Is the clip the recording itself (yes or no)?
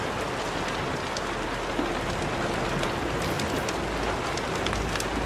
yes